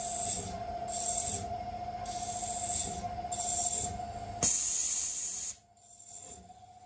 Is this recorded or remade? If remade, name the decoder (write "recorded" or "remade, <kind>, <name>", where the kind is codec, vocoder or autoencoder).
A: recorded